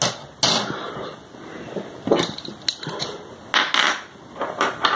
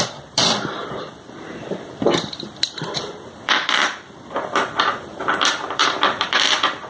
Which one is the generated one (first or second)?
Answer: second